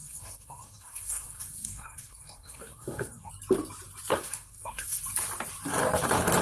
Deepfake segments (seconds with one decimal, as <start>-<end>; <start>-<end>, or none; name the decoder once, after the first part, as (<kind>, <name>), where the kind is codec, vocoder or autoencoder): 0.0-3.3 (codec, SNAC); 4.1-5.0